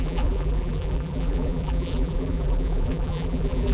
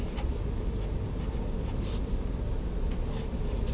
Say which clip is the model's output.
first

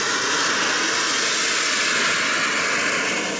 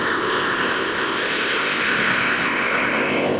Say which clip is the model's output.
second